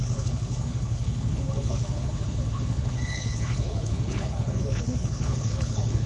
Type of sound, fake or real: fake